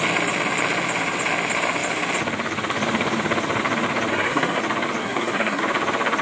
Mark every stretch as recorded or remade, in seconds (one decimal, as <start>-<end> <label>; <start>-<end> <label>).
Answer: 0.0-4.1 recorded; 4.1-4.6 remade; 4.6-5.0 recorded; 5.0-5.6 remade; 5.6-6.2 recorded